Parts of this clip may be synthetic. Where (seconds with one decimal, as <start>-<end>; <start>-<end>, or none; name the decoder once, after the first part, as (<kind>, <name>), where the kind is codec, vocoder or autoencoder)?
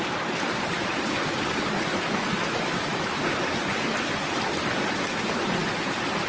1.9-3.2 (autoencoder, DAC-VAE)